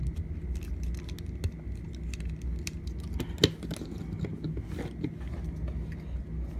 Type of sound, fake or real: real